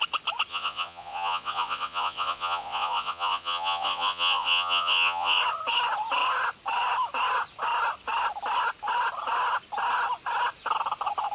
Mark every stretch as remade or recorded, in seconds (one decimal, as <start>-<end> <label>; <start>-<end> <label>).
0.0-0.5 recorded; 0.5-5.4 remade; 5.4-11.3 recorded